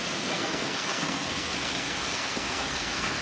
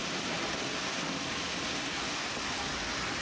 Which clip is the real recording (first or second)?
second